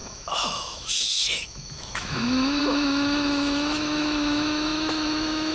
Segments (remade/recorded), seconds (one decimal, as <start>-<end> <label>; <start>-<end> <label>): 0.0-5.5 remade